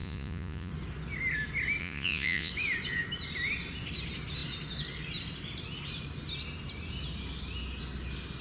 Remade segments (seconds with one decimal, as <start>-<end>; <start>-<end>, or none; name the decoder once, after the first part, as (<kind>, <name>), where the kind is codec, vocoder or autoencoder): 0.0-0.7 (vocoder, Vocos); 1.8-2.5

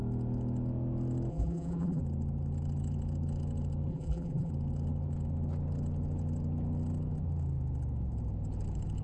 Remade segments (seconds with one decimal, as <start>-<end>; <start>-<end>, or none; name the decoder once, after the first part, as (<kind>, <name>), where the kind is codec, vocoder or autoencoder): 1.3-2.0 (vocoder, BigVGAN v2); 3.9-4.5